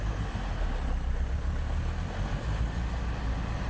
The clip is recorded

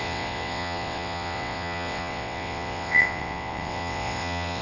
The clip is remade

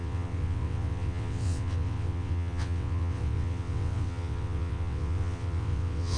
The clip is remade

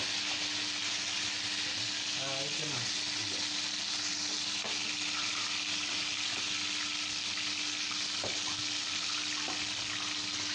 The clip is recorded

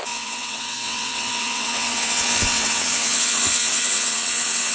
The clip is remade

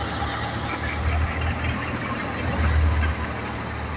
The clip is recorded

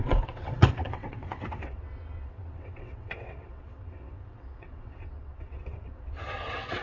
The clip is remade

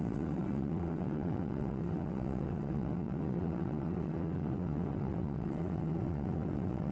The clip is remade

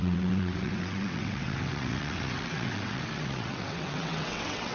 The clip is remade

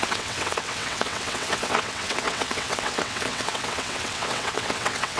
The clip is remade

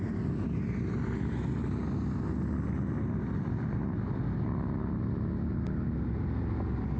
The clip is recorded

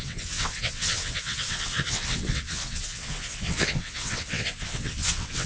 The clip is remade